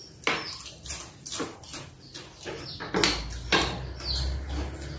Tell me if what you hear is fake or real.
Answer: real